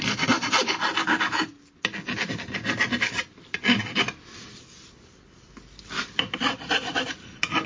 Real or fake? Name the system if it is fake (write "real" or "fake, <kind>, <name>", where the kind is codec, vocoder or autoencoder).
real